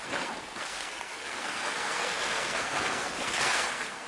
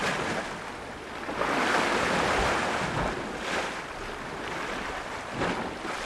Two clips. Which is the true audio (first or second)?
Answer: second